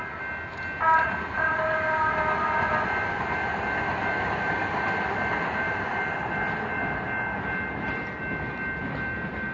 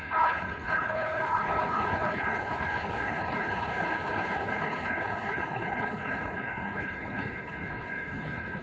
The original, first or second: first